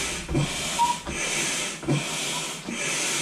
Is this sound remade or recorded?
recorded